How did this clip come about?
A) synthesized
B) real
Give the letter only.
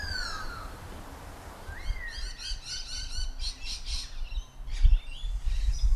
B